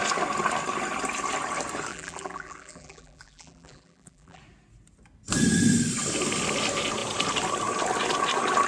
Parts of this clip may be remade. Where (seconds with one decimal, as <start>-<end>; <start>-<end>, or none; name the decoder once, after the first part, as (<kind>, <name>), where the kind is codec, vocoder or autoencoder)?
1.9-4.4 (vocoder, BigVGAN v2)